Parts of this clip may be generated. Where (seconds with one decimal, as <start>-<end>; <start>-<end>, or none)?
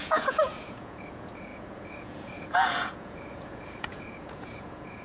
0.0-5.0